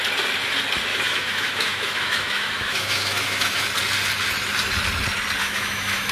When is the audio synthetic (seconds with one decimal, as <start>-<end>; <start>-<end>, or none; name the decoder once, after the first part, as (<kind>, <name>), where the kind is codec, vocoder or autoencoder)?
0.9-3.7 (autoencoder, DAC-VAE); 5.4-6.1